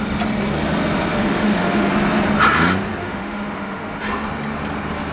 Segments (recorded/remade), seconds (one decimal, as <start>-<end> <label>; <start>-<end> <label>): 0.0-1.1 recorded; 1.1-1.9 remade; 1.9-3.0 recorded; 3.0-4.0 remade; 4.0-5.1 recorded